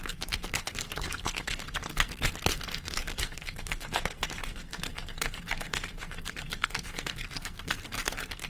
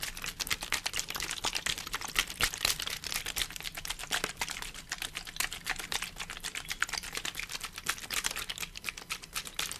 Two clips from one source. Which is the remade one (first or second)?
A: first